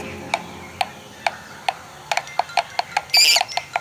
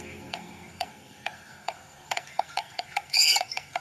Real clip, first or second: first